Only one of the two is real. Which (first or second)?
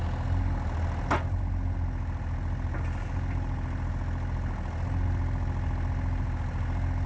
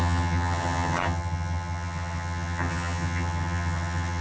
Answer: first